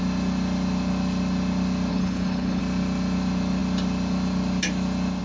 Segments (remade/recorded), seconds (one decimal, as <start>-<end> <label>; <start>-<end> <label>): 0.0-1.9 recorded; 1.9-2.6 remade; 2.6-5.2 recorded